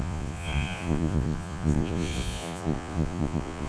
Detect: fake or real fake